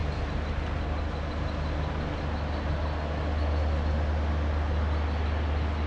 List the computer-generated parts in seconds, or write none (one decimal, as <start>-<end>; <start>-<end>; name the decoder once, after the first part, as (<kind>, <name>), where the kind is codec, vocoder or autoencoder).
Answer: none